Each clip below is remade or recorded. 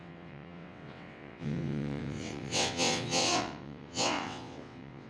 remade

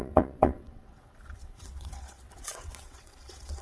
remade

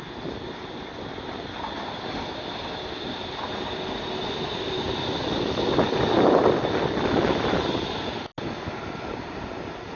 recorded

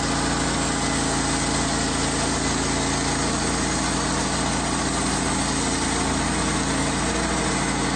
recorded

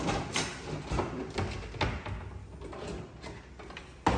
recorded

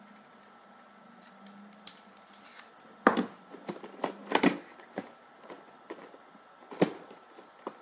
recorded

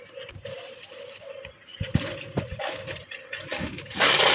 recorded